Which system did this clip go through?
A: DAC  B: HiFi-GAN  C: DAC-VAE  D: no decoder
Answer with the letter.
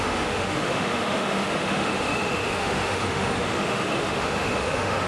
C